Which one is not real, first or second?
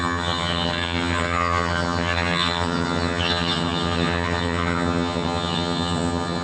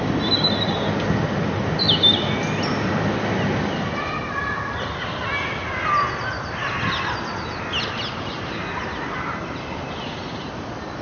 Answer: first